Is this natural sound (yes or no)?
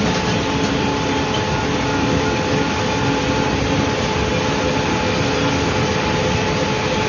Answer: yes